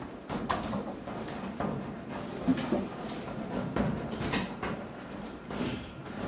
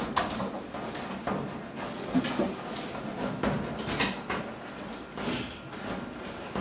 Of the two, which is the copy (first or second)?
first